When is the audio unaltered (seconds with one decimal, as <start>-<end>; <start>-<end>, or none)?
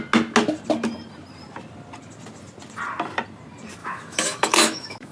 0.0-3.8